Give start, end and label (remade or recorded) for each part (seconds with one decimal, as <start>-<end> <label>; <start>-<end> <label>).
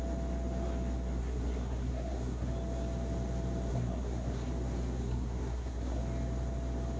0.0-1.2 recorded; 1.2-2.5 remade; 2.5-3.7 recorded; 3.7-4.5 remade; 4.5-5.0 recorded; 5.0-6.0 remade; 6.0-7.0 recorded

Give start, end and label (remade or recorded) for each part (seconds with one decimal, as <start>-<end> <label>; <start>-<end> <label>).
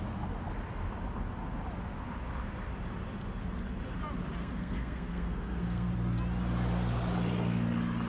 0.0-4.4 recorded; 4.4-5.9 remade; 5.9-8.1 recorded